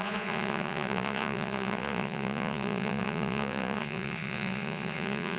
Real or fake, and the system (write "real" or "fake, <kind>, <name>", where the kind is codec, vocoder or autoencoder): fake, vocoder, Vocos